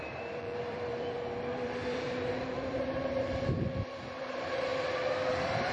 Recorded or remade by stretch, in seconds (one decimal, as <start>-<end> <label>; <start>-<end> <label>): 0.0-4.7 remade; 4.7-5.3 recorded; 5.3-5.7 remade